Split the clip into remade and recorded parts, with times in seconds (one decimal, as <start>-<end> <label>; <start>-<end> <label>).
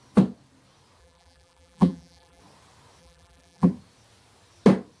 0.0-1.0 recorded; 1.0-2.4 remade; 2.4-3.0 recorded; 3.0-3.7 remade; 3.7-5.0 recorded